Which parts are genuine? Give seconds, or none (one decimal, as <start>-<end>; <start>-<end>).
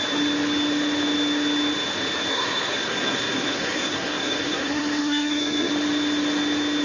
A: 0.0-2.3; 5.7-6.8